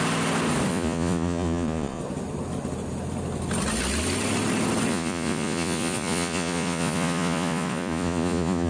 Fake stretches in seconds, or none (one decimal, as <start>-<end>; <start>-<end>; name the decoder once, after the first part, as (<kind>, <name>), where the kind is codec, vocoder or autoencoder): 0.7-2.0 (vocoder, Vocos); 4.9-8.7